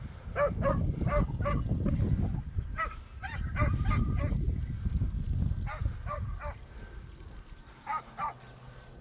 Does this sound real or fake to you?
real